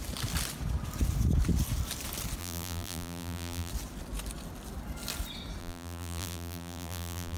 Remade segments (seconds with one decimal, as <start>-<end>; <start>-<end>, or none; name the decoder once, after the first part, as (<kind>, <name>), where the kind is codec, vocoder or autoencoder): 2.4-3.7 (vocoder, BigVGAN v2); 5.6-7.4